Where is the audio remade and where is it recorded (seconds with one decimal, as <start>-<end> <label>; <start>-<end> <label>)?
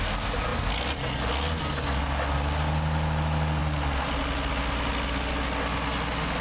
0.0-6.4 recorded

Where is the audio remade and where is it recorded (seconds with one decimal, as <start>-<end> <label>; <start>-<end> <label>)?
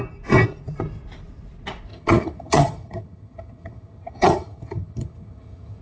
0.0-1.9 recorded; 1.9-5.8 remade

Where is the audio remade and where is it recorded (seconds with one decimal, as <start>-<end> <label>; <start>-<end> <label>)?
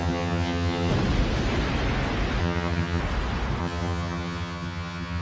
0.0-0.9 remade; 0.9-2.4 recorded; 2.4-3.0 remade; 3.0-3.6 recorded; 3.6-5.2 remade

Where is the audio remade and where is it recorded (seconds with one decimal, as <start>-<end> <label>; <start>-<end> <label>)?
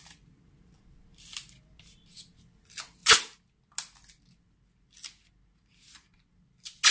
0.0-6.9 recorded